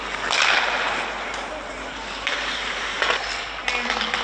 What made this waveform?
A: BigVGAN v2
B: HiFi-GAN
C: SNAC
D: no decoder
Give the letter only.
D